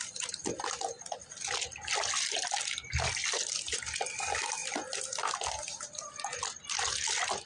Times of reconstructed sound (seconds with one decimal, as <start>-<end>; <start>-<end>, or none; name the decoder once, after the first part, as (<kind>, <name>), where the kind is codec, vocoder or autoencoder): none